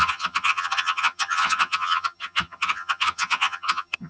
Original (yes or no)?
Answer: no